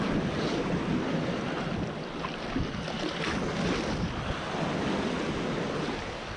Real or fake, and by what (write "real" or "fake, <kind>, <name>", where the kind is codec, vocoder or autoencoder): real